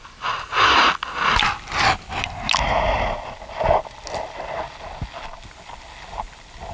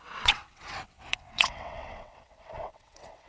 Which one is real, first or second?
first